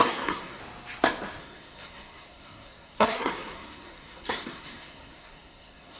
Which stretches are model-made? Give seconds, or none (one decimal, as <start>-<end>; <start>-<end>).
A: 0.0-0.6; 1.4-6.0